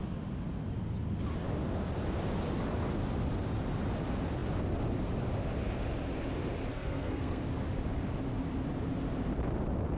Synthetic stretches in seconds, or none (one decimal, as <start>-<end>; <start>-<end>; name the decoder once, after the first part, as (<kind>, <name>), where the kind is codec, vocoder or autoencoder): 6.7-7.4 (codec, SNAC)